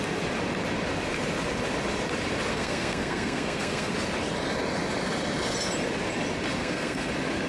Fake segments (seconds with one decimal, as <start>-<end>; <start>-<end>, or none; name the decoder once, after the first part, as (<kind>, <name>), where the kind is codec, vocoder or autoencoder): 2.5-3.9 (codec, SNAC); 6.6-7.1